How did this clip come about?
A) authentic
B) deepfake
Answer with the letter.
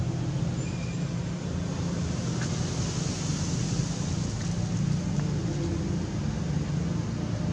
A